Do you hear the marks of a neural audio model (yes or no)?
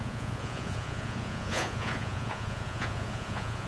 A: yes